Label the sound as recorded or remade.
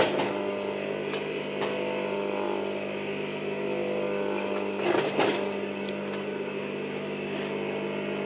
recorded